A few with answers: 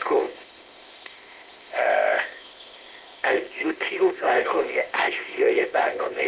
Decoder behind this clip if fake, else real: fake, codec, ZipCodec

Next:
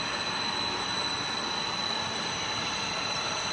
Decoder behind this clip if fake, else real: real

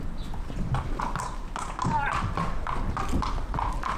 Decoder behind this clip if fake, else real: real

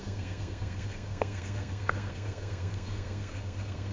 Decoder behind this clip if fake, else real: fake, codec, SNAC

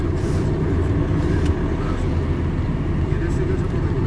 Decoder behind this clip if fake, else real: real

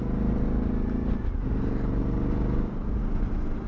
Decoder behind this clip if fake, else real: real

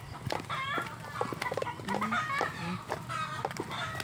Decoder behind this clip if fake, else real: real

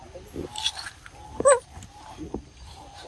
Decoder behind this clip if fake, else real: real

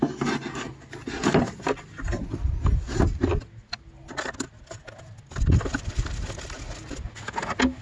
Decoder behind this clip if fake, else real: real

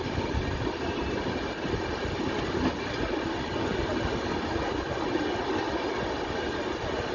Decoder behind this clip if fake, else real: real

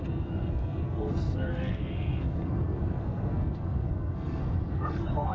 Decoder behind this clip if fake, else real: fake, codec, SNAC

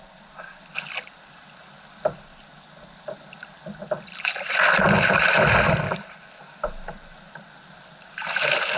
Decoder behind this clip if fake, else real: real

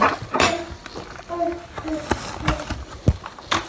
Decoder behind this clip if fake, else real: real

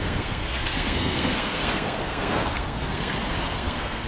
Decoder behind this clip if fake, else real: fake, codec, SNAC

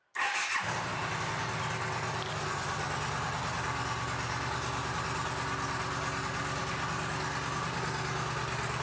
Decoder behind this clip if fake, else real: real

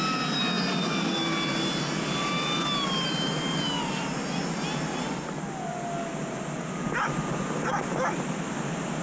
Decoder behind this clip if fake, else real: real